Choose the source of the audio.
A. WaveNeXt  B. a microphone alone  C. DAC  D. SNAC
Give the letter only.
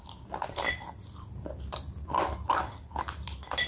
B